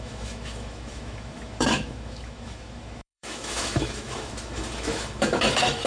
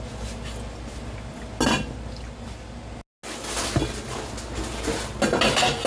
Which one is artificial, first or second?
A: first